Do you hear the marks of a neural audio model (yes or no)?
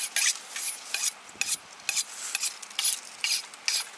no